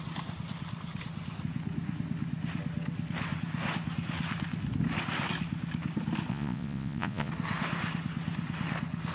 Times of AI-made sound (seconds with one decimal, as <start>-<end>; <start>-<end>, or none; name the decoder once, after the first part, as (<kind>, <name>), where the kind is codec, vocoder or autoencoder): 6.3-7.3 (vocoder, Vocos)